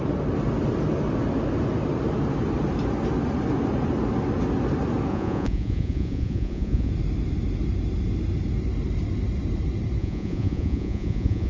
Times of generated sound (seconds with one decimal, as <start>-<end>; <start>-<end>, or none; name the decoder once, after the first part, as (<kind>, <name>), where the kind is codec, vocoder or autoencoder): 5.1-6.9 (vocoder, Vocos); 10.0-11.5